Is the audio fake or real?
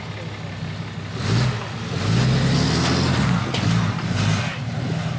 real